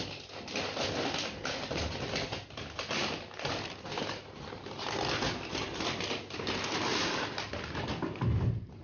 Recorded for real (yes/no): yes